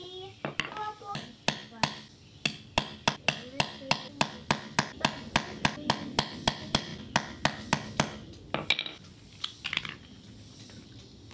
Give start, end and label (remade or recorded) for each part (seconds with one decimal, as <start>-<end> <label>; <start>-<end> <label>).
0.0-11.3 recorded